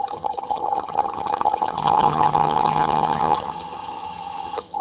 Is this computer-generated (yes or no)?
yes